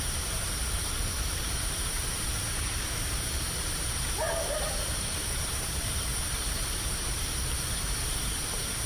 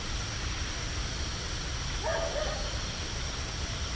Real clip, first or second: second